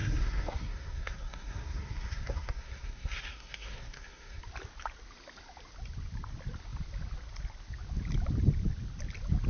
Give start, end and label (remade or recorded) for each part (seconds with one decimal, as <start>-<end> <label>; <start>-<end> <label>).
0.0-4.4 remade; 4.4-9.5 recorded